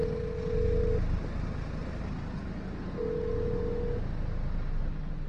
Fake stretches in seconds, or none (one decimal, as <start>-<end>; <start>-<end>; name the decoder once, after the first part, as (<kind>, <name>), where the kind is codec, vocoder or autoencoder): none